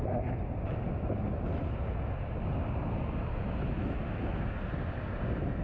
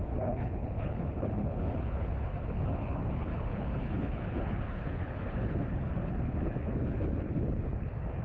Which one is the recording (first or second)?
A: first